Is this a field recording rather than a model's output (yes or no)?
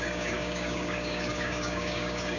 no